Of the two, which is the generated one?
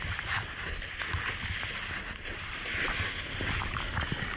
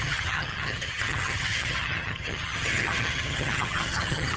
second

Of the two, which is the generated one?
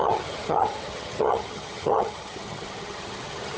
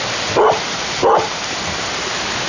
first